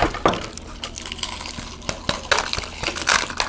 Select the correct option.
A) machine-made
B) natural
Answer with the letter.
B